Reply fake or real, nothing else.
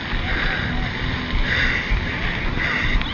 real